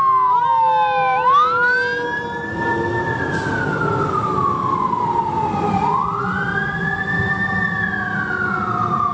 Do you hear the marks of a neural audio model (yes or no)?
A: no